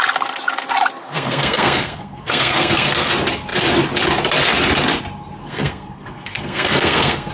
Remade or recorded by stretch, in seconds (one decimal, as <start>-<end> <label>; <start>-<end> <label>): 0.0-1.0 recorded; 1.0-3.1 remade; 3.1-5.4 recorded; 5.4-7.3 remade